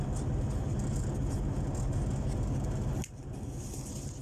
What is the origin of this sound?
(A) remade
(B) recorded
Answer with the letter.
B